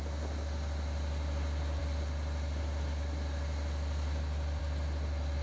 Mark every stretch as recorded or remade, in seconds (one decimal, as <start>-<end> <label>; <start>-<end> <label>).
0.0-5.4 recorded